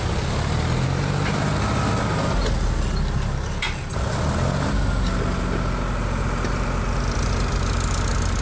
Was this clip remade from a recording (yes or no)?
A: no